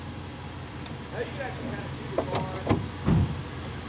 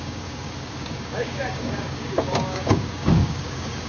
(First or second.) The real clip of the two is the first